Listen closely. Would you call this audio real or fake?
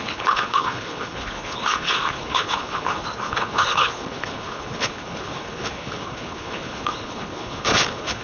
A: fake